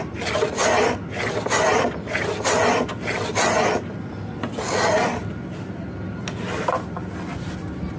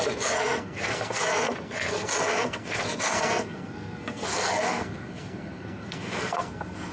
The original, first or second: first